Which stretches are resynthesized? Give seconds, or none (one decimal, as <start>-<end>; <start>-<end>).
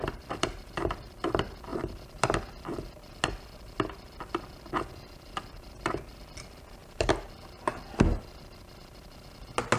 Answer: none